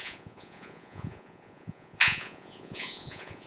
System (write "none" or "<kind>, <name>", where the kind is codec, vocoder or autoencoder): vocoder, Vocos